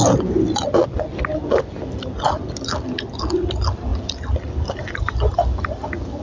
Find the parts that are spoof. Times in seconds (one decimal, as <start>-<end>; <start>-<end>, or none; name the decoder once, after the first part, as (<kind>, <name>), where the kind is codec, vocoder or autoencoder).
none